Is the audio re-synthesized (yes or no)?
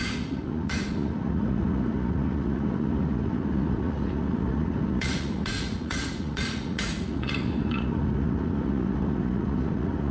yes